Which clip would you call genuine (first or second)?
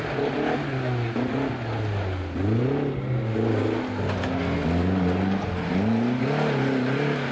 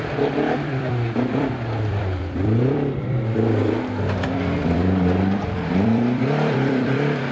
first